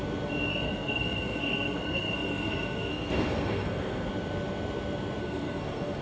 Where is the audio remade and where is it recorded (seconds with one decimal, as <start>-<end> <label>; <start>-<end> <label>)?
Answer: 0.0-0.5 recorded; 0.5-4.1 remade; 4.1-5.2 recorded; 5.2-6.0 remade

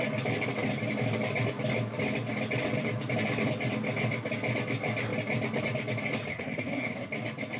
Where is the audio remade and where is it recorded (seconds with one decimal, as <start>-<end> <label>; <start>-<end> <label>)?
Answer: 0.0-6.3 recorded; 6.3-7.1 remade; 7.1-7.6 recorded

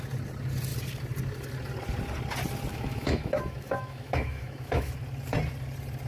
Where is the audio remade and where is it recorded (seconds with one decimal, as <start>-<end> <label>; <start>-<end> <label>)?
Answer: 0.0-2.7 recorded; 2.7-4.9 remade; 4.9-6.1 recorded

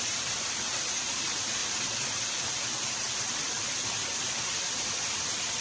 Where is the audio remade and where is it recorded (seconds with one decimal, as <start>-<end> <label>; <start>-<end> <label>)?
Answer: 0.0-1.6 remade; 1.6-3.5 recorded; 3.5-5.6 remade

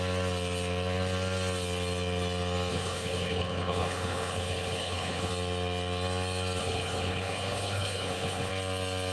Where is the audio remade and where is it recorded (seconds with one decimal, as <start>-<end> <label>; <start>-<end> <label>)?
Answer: 0.0-2.7 recorded; 2.7-5.3 remade; 5.3-6.6 recorded; 6.6-8.5 remade; 8.5-9.1 recorded

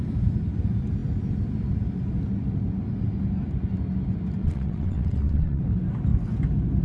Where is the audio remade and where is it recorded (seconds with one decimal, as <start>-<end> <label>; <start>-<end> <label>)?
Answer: 0.0-4.4 recorded; 4.4-5.6 remade; 5.6-6.8 recorded

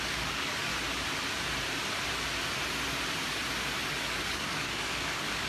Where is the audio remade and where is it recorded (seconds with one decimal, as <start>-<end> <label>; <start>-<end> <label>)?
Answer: 0.0-0.7 remade; 0.7-4.0 recorded; 4.0-5.5 remade